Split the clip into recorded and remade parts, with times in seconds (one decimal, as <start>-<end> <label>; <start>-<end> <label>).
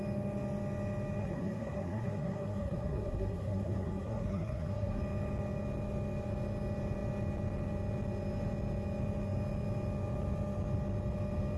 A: 0.0-1.2 recorded; 1.2-5.0 remade; 5.0-11.6 recorded